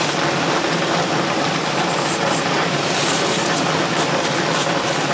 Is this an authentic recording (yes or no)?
yes